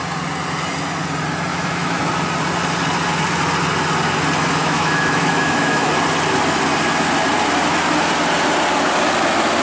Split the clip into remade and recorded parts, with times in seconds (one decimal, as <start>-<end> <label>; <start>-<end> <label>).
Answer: 0.0-1.5 recorded; 1.5-2.1 remade; 2.1-4.6 recorded; 4.6-5.9 remade; 5.9-9.6 recorded